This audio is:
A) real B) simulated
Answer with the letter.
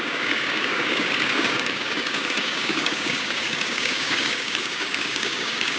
B